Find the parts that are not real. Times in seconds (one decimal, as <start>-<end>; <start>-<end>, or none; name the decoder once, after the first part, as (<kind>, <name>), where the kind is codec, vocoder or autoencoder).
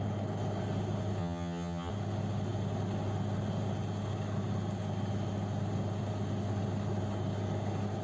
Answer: 1.2-1.9 (vocoder, HiFi-GAN)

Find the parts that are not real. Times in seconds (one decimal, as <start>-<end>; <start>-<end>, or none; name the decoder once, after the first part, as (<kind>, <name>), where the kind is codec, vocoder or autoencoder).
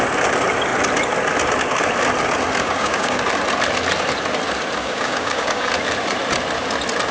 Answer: 2.6-3.2 (codec, DAC); 4.8-5.7